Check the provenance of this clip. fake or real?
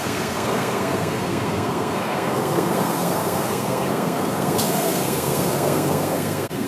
fake